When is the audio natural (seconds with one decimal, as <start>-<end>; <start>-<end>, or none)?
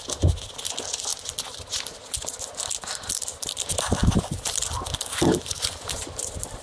0.0-6.6